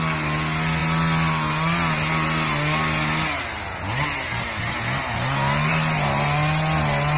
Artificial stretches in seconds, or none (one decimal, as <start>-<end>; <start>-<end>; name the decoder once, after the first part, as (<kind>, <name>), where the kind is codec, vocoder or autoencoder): none